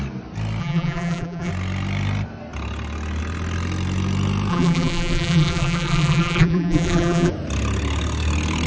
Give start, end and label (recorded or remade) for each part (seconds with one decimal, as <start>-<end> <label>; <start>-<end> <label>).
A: 0.0-0.6 recorded; 0.6-1.5 remade; 1.5-4.5 recorded; 4.5-7.3 remade; 7.3-8.7 recorded